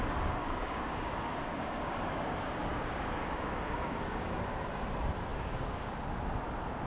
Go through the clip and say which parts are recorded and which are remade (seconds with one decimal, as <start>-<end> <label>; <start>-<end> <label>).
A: 0.0-0.4 recorded; 0.4-4.5 remade; 4.5-5.3 recorded; 5.3-5.9 remade; 5.9-6.9 recorded